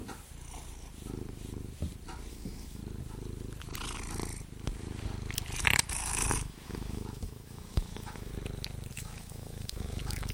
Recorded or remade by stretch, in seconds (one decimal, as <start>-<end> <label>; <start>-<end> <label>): 0.0-2.3 recorded; 2.3-2.8 remade; 2.8-5.9 recorded; 5.9-8.3 remade; 8.3-8.9 recorded; 8.9-10.3 remade